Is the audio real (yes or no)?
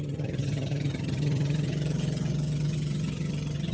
no